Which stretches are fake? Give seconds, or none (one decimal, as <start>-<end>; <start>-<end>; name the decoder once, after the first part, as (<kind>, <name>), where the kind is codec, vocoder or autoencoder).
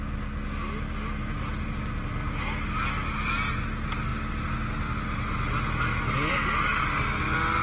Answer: none